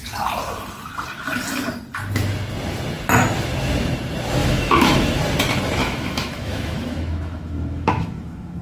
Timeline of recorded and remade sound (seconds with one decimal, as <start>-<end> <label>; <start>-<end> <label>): 0.0-4.4 recorded; 4.4-5.2 remade; 5.2-5.8 recorded; 5.8-8.6 remade